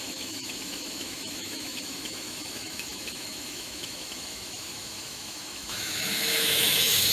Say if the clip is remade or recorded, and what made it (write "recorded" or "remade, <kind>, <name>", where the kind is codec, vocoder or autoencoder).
remade, autoencoder, DAC-VAE